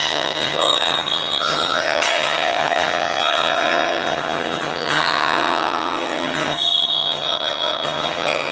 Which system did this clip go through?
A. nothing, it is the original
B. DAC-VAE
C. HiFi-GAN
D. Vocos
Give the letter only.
C